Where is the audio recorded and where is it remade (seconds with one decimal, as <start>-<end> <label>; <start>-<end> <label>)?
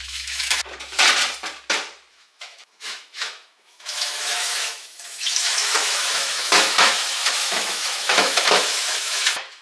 0.0-0.6 remade; 0.6-2.1 recorded; 2.1-9.6 remade